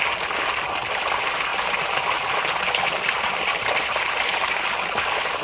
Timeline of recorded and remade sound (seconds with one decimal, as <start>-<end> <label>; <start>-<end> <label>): 0.0-1.5 recorded; 1.5-4.7 remade; 4.7-5.4 recorded